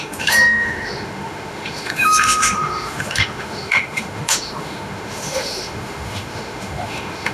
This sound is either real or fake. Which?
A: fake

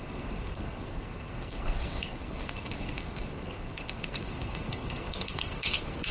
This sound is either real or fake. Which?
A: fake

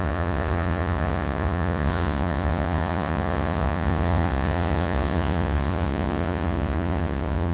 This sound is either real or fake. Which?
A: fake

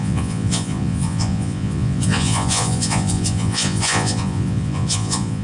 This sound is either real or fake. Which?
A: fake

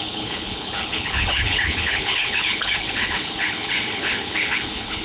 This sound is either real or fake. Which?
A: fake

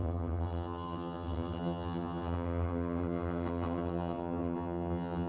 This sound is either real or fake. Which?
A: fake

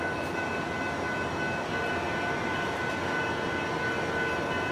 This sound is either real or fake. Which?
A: real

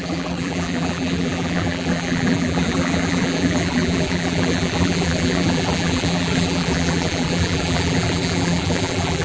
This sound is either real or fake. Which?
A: fake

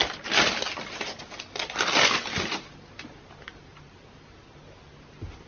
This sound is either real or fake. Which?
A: real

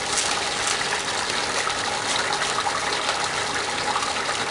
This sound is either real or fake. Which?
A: real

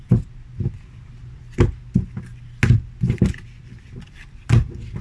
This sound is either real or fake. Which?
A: real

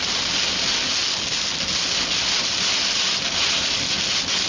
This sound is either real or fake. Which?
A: real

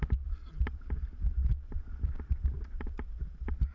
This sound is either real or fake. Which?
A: real